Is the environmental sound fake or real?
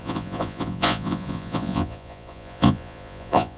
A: fake